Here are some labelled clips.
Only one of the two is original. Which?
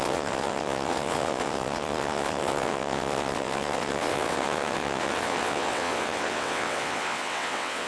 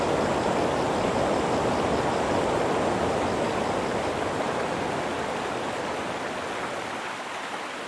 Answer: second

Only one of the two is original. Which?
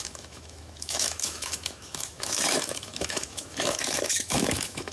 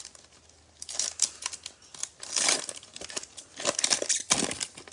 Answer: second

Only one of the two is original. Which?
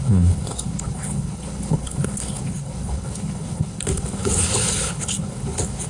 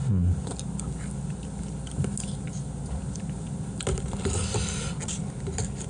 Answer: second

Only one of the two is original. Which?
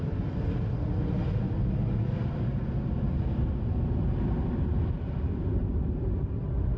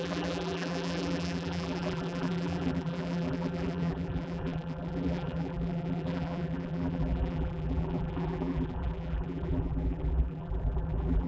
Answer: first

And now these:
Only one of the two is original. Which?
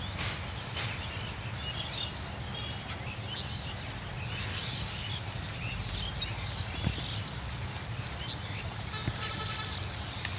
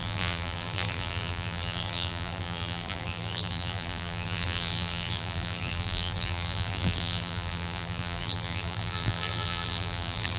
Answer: first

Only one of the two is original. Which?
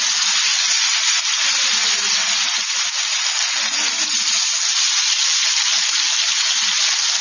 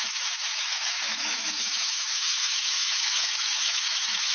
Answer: first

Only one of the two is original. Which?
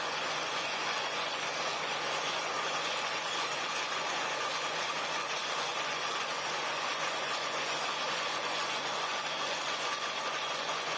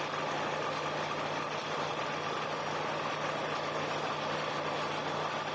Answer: second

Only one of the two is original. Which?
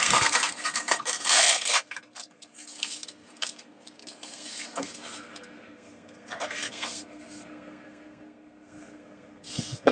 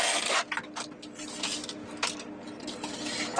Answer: second